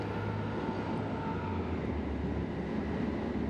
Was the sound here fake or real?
real